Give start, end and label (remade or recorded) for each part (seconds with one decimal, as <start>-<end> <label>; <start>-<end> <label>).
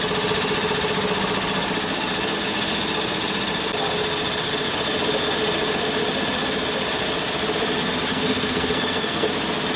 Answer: 0.0-8.1 recorded; 8.1-9.3 remade; 9.3-9.8 recorded